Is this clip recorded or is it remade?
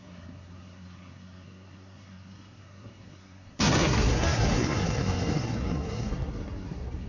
remade